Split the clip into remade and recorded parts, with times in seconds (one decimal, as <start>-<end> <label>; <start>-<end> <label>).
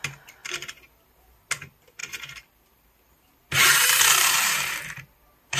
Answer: 0.0-0.4 recorded; 0.4-1.5 remade; 1.5-2.0 recorded; 2.0-5.6 remade